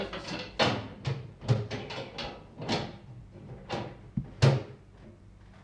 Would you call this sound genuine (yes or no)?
yes